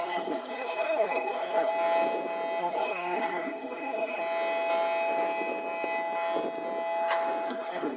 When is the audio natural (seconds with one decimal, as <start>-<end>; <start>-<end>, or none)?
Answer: 1.7-2.6; 4.2-7.5